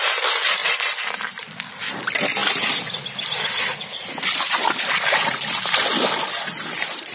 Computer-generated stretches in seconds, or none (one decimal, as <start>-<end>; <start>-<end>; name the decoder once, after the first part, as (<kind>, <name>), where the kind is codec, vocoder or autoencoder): none